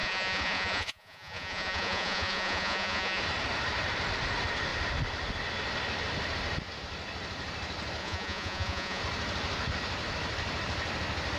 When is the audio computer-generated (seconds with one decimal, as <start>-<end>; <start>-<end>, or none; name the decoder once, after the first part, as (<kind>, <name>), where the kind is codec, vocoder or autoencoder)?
0.0-3.2 (vocoder, Vocos); 8.0-9.0